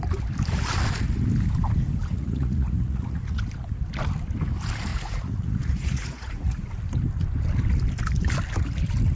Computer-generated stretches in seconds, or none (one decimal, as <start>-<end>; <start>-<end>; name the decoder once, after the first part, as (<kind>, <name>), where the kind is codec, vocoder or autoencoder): 2.1-3.4 (vocoder, Vocos); 4.9-6.7